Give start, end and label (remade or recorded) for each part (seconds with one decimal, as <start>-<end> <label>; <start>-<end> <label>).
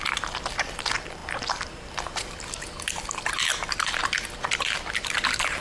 0.0-5.6 recorded